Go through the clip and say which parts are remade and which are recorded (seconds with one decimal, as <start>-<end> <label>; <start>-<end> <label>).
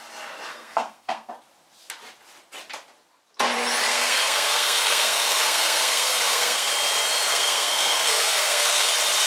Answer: 0.0-0.5 recorded; 0.5-1.3 remade; 1.3-3.9 recorded; 3.9-6.7 remade; 6.7-7.3 recorded; 7.3-8.9 remade; 8.9-9.3 recorded